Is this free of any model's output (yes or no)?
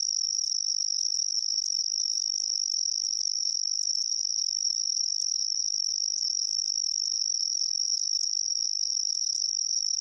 yes